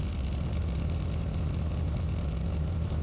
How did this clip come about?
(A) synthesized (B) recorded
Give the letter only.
B